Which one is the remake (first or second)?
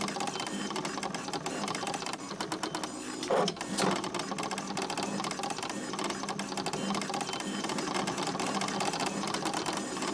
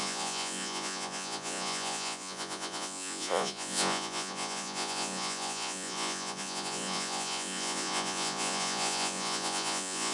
second